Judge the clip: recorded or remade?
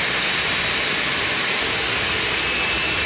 recorded